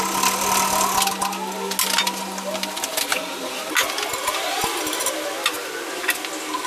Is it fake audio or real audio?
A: real